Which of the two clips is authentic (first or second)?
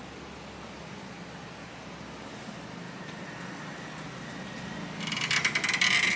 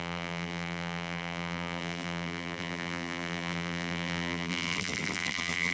first